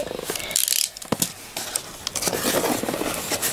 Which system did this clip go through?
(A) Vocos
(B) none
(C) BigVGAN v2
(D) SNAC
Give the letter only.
B